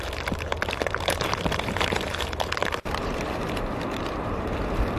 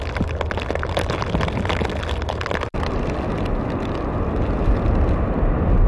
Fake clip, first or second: first